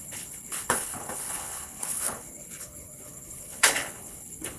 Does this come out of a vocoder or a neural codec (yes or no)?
yes